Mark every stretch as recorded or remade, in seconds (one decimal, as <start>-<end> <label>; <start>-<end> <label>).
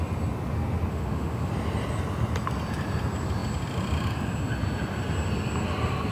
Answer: 0.0-0.9 recorded; 0.9-1.5 remade; 1.5-6.1 recorded